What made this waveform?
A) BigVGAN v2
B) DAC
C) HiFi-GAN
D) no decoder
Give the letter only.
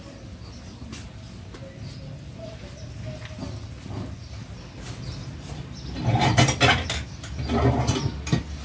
D